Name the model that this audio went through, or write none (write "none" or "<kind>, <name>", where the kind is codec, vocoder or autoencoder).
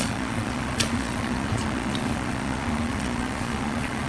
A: vocoder, Vocos